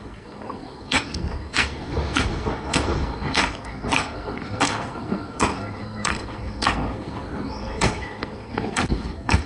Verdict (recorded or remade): remade